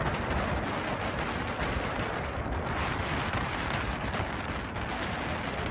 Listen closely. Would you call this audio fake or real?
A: real